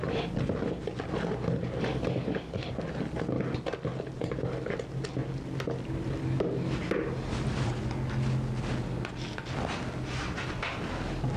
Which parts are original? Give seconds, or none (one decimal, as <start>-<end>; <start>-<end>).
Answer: 0.0-1.9; 2.7-11.4